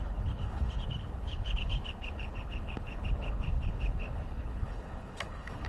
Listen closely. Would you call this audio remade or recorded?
remade